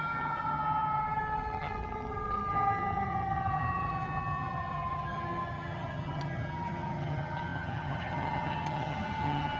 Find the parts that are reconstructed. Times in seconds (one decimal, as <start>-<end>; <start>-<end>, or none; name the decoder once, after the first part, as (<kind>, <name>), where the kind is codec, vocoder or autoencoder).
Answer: 0.0-9.6 (vocoder, HiFi-GAN)